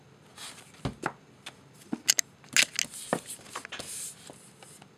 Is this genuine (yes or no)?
yes